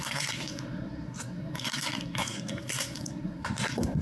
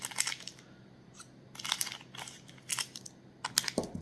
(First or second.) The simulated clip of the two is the first